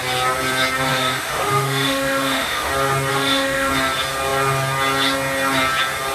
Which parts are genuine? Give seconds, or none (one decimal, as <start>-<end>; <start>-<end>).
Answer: 0.0-0.9; 2.7-3.1; 3.7-6.1